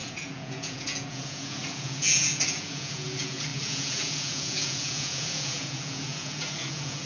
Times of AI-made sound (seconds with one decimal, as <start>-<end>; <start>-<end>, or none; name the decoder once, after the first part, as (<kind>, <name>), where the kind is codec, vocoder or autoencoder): 0.0-7.1 (vocoder, Vocos)